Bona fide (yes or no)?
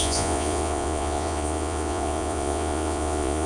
no